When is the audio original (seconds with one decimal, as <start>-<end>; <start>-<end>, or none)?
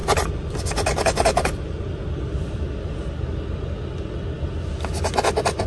0.6-5.7